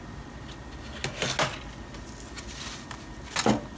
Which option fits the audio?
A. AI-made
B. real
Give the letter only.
B